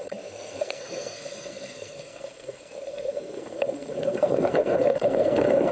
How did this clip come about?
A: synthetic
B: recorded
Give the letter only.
A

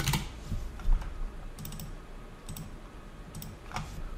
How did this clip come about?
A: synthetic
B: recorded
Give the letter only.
A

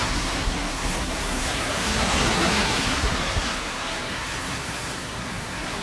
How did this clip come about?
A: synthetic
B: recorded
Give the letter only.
A